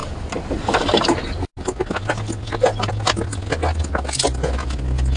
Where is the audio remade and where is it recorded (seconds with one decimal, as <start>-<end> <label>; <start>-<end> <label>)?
0.0-5.2 recorded